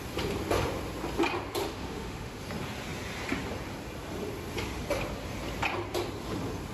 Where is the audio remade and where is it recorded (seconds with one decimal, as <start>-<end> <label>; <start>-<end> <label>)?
0.0-1.6 recorded; 1.6-2.4 remade; 2.4-6.7 recorded